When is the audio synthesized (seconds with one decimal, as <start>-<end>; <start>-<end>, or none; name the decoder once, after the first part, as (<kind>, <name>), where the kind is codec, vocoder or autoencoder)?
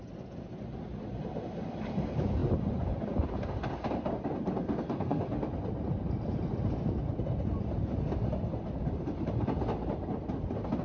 4.6-5.2 (codec, SNAC)